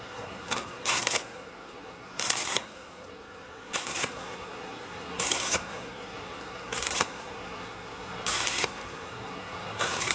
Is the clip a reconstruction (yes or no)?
yes